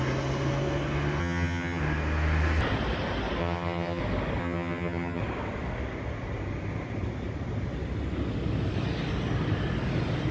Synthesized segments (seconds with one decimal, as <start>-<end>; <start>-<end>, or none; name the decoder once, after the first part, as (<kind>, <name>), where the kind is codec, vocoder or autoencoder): 1.2-1.8 (vocoder, HiFi-GAN); 3.4-4.0; 4.4-5.2